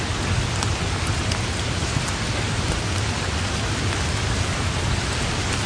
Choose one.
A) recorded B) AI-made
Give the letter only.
A